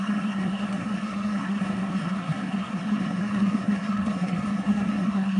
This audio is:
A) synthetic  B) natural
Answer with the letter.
A